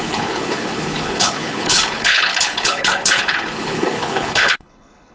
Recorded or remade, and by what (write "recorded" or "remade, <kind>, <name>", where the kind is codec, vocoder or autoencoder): remade, codec, HILCodec